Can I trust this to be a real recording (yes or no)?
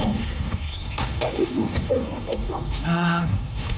no